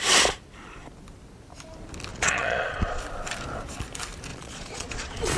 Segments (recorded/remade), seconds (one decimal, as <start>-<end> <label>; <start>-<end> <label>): 0.0-2.1 recorded; 2.1-3.0 remade; 3.0-4.3 recorded; 4.3-5.4 remade